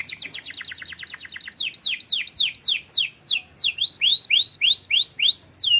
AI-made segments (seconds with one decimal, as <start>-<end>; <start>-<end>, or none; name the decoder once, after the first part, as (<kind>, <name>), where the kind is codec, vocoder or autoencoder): none